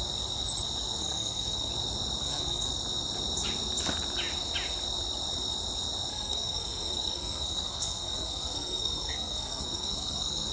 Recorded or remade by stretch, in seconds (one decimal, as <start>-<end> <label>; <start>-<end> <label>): 0.0-1.0 recorded; 1.0-1.7 remade; 1.7-2.2 recorded; 2.2-2.7 remade; 2.7-6.1 recorded; 6.1-10.5 remade